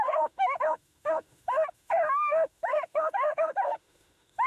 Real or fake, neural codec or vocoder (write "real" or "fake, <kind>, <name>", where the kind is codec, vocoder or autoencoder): fake, autoencoder, DAC-VAE